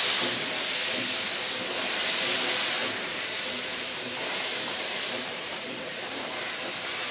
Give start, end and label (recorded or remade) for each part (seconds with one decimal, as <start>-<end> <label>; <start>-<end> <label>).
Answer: 0.0-2.8 recorded; 2.8-6.4 remade; 6.4-7.1 recorded